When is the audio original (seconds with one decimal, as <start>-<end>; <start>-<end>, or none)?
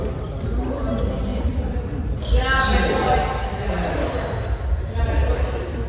0.0-5.9